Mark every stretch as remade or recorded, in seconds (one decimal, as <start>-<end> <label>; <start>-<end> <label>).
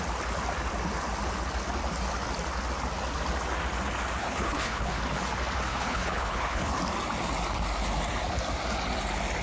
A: 0.0-4.2 recorded; 4.2-5.0 remade; 5.0-5.7 recorded; 5.7-6.8 remade; 6.8-9.4 recorded